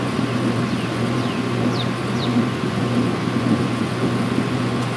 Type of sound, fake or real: fake